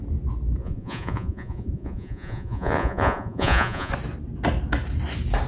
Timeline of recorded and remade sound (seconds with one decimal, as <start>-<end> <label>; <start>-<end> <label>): 0.0-0.6 recorded; 0.6-3.9 remade; 3.9-5.5 recorded